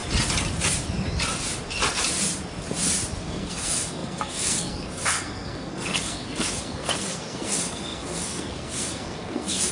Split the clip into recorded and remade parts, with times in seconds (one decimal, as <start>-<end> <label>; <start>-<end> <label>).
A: 0.0-3.2 recorded; 3.2-9.7 remade